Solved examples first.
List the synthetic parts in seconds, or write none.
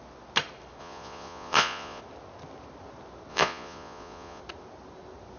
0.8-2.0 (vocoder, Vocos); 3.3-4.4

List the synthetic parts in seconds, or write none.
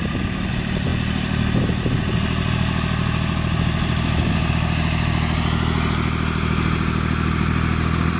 none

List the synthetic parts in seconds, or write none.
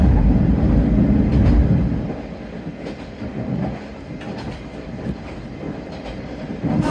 0.0-1.6 (vocoder, BigVGAN v2); 4.3-6.9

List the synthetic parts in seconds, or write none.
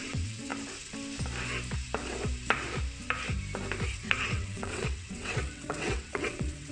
0.0-0.5 (vocoder, WaveNeXt); 4.0-6.7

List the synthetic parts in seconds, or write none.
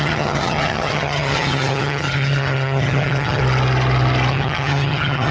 0.0-3.4 (vocoder, HiFi-GAN); 4.3-5.3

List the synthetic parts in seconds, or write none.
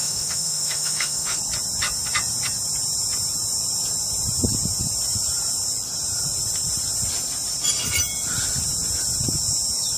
0.0-1.4 (autoencoder, DAC-VAE)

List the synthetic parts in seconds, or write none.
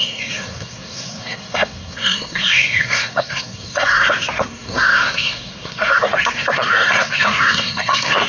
0.0-8.3 (codec, SNAC)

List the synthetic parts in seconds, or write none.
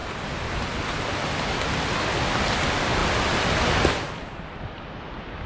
none